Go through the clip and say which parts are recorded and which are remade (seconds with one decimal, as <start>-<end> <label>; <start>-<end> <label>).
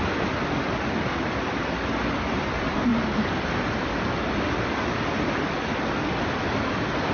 0.0-7.1 recorded